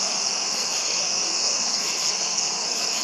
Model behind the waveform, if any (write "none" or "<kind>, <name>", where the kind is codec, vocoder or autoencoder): codec, SNAC